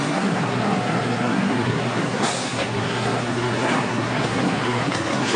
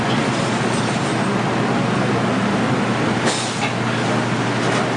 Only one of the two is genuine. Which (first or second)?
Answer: second